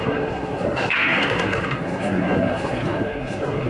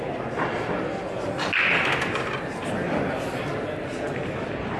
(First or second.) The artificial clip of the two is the first